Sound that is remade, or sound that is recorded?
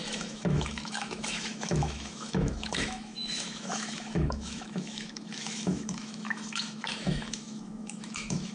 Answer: remade